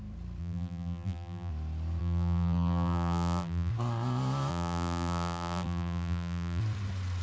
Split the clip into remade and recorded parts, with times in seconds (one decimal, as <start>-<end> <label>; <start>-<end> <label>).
0.0-0.4 recorded; 0.4-1.5 remade; 1.5-2.0 recorded; 2.0-3.7 remade; 3.7-4.5 recorded; 4.5-6.6 remade; 6.6-7.2 recorded